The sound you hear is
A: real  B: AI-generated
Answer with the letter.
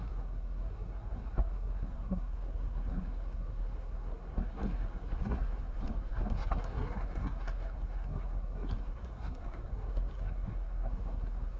B